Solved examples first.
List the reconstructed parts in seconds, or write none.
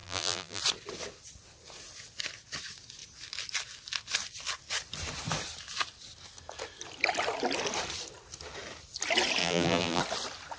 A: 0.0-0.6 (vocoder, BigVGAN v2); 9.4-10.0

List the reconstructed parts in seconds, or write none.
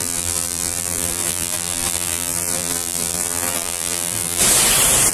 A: 0.0-4.4 (vocoder, BigVGAN v2)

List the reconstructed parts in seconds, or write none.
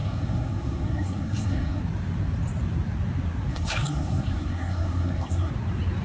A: 0.0-1.8 (codec, SNAC); 3.5-5.5